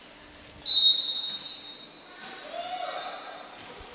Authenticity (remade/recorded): recorded